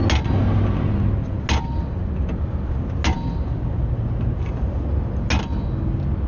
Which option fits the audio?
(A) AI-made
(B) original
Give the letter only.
B